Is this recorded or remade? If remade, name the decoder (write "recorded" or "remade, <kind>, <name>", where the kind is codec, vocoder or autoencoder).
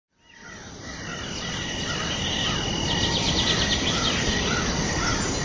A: recorded